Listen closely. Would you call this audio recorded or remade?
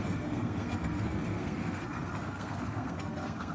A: remade